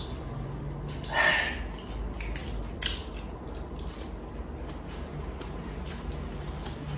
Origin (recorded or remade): recorded